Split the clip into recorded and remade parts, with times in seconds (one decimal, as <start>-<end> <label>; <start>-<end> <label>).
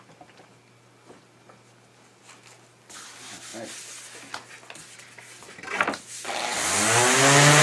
0.0-7.6 recorded